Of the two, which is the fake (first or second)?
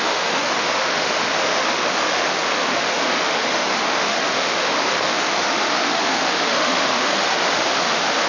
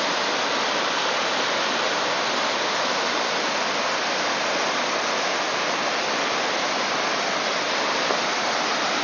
first